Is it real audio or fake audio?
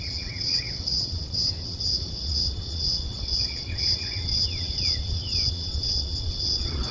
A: fake